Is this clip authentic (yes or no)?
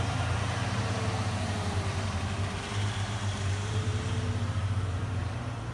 no